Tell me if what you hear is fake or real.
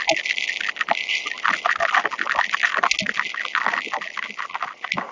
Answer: real